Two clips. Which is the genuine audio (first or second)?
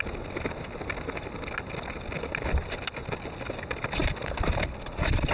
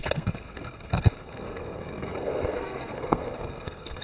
first